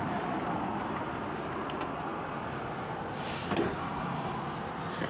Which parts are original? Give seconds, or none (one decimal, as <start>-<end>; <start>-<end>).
0.0-5.1